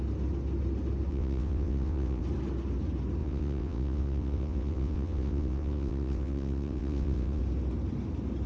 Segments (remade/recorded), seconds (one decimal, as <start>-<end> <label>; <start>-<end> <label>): 0.0-1.1 recorded; 1.1-2.2 remade; 2.2-3.2 recorded; 3.2-7.4 remade; 7.4-8.5 recorded